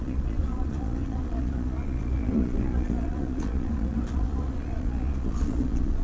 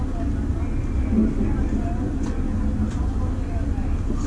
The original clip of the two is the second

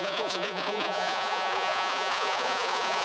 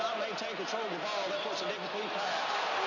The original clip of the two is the second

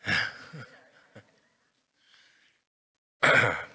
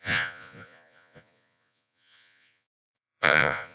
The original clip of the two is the first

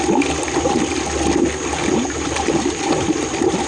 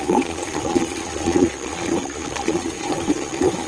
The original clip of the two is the first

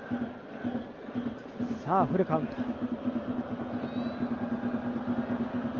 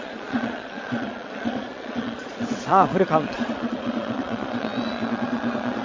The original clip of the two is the first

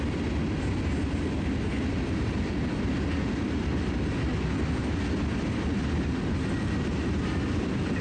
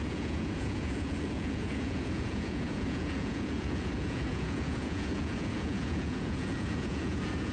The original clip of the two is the first